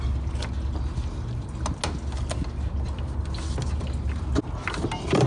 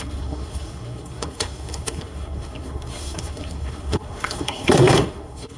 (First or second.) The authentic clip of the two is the first